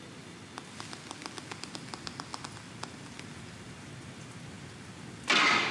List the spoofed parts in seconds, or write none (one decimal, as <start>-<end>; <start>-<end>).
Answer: none

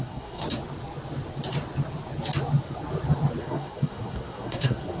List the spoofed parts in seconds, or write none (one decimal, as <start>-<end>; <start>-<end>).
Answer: 0.0-0.4; 3.4-5.0

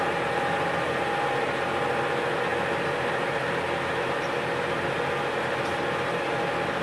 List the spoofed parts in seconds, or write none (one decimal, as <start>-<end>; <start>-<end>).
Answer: none

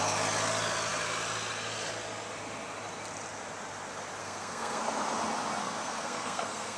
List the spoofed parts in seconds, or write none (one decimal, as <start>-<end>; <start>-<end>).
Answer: 4.2-4.8; 5.6-6.8

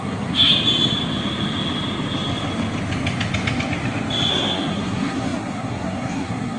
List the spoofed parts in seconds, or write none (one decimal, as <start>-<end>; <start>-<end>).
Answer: 0.0-0.5; 4.3-6.6

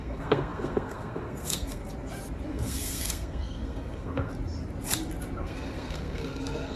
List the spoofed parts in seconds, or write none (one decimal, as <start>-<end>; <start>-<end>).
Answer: 0.0-1.8; 2.5-4.3; 5.4-6.8